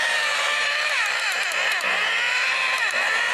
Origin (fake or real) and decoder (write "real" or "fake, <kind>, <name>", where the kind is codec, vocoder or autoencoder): fake, vocoder, BigVGAN v2